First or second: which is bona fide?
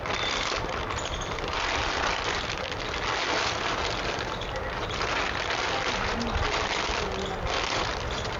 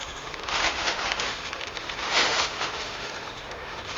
first